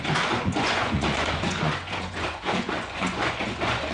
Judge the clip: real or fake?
fake